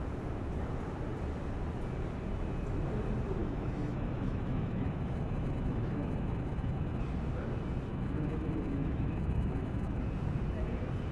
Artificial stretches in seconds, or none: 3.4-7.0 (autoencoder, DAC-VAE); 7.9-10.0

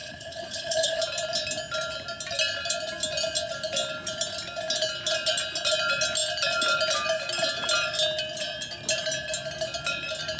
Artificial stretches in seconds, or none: 0.0-1.0 (codec, HILCodec)

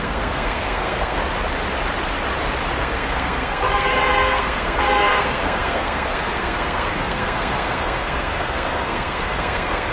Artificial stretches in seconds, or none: 0.0-1.2 (codec, SNAC); 2.8-9.9

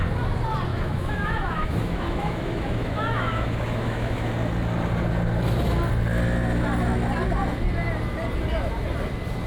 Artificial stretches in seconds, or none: 0.7-4.3 (autoencoder, DAC-VAE)

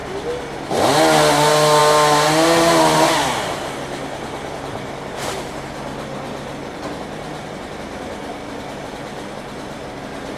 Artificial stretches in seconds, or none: none

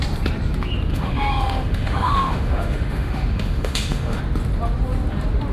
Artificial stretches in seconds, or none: 0.9-4.2 (autoencoder, DAC-VAE)